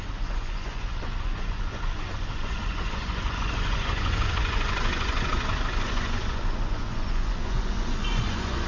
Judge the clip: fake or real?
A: fake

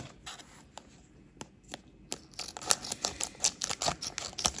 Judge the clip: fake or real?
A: real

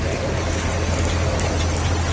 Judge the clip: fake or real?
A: real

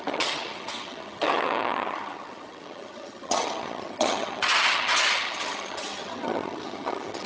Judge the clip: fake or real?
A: fake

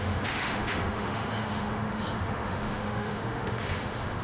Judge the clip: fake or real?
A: fake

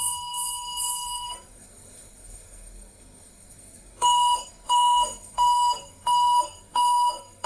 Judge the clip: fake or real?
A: fake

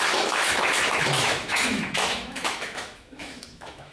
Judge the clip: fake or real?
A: fake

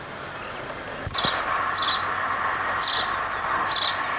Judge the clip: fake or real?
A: real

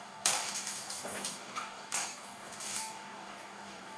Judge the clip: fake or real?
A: fake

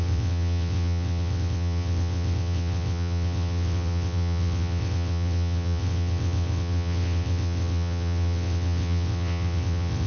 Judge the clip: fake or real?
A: fake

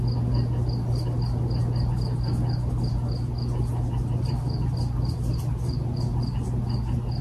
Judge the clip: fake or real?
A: real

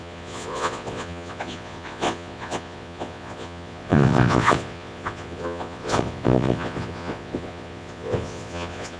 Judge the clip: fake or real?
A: fake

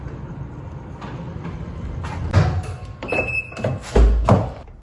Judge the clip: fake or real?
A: real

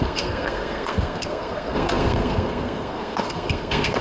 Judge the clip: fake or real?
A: fake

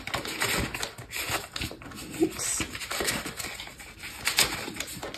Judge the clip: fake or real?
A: real